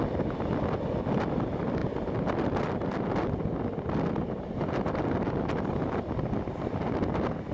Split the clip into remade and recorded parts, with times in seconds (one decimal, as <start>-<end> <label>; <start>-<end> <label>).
0.0-4.2 recorded; 4.2-4.7 remade; 4.7-7.5 recorded